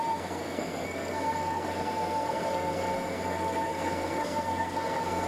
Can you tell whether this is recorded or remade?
remade